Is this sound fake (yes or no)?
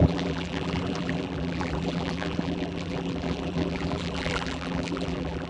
yes